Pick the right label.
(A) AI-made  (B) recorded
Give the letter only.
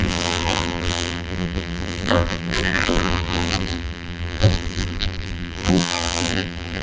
A